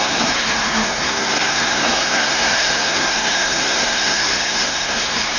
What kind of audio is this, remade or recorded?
remade